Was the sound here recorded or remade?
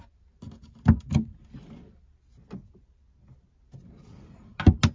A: recorded